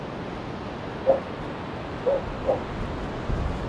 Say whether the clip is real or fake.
real